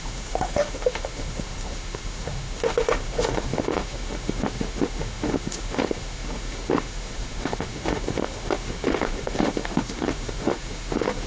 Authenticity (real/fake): fake